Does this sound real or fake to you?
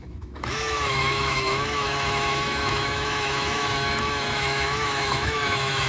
fake